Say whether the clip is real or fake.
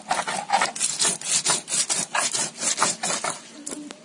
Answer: real